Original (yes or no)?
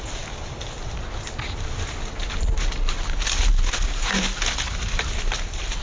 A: yes